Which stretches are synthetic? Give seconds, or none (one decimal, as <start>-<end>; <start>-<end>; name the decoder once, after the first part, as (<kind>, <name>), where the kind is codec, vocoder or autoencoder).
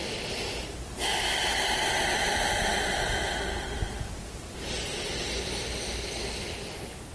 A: none